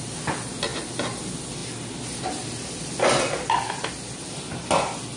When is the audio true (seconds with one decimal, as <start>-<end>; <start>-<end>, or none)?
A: 0.0-5.2

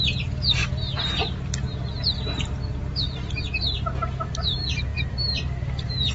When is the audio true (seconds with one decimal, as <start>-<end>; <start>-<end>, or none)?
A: 0.0-4.9

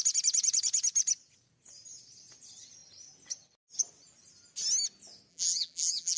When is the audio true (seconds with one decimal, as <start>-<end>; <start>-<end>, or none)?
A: 0.0-5.3

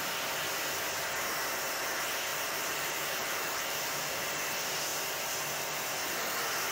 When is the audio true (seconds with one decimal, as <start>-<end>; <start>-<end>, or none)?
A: 0.0-2.3; 4.3-6.7

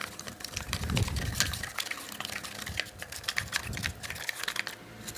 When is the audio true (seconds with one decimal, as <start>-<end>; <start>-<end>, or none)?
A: 1.4-5.2

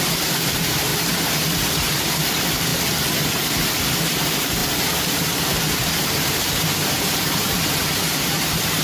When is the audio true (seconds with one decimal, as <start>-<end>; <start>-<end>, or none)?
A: 0.9-1.7; 2.7-3.8

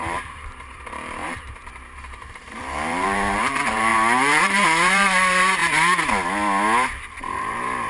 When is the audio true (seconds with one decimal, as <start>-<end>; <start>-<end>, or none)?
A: 5.6-7.2

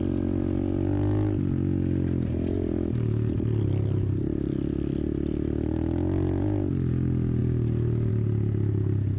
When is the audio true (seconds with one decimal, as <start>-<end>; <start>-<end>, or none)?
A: 0.0-9.2